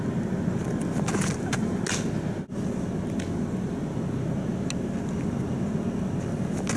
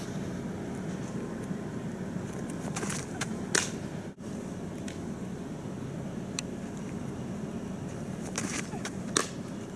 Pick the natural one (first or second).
first